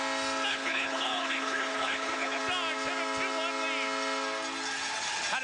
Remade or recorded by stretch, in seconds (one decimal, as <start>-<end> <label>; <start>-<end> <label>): 0.0-0.5 recorded; 0.5-2.4 remade; 2.4-5.4 recorded